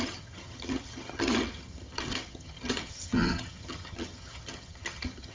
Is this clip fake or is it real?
fake